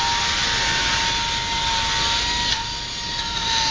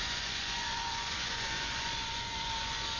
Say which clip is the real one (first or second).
first